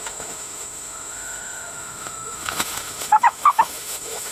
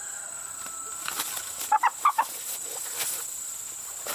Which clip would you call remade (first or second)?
first